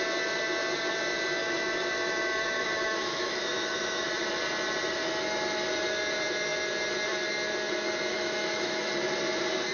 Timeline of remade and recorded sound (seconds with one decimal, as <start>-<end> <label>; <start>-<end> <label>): 0.0-1.4 recorded; 1.4-4.1 remade; 4.1-8.1 recorded; 8.1-8.9 remade; 8.9-9.7 recorded